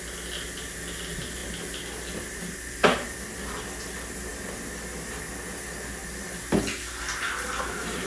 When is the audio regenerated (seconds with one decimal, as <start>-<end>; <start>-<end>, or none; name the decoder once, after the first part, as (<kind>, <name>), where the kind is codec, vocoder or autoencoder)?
none